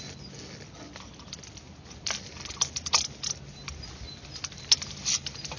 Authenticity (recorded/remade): recorded